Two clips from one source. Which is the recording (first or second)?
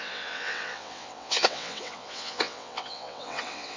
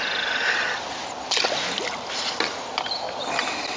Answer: second